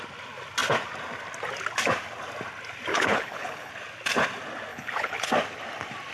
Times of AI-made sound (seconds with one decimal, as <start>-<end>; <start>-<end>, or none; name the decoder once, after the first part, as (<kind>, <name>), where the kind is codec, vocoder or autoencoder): 2.9-3.7 (codec, HILCodec); 4.7-5.3